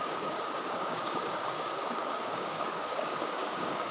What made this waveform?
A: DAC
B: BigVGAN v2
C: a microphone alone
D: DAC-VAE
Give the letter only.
A